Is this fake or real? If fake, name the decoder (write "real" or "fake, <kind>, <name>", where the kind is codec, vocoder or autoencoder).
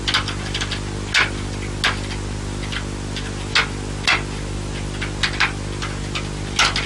real